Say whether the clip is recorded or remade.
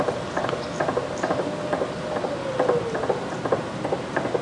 recorded